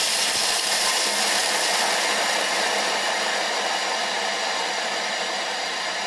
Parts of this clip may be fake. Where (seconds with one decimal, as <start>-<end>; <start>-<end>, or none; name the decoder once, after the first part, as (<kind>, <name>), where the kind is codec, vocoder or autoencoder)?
0.0-1.4 (vocoder, BigVGAN v2); 2.8-6.1